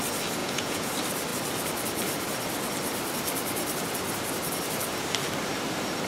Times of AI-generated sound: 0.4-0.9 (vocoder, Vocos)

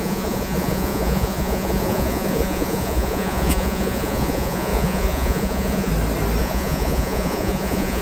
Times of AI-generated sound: 0.0-5.9 (vocoder, Vocos); 6.4-8.0

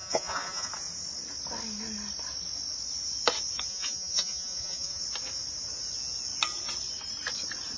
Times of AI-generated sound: 0.0-0.7 (vocoder, Vocos); 3.7-5.0

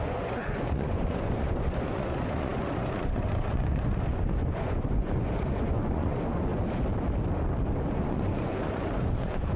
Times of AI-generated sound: 0.0-6.5 (vocoder, Vocos); 7.9-9.6

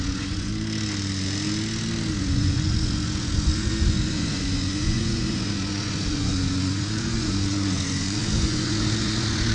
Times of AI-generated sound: 0.0-0.5 (vocoder, Vocos); 2.1-9.5

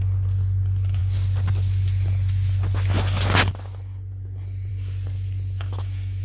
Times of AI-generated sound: none